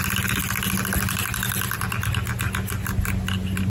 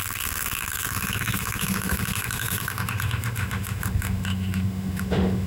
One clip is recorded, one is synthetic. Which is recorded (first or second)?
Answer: first